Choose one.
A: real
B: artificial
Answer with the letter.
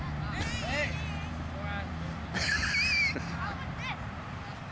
A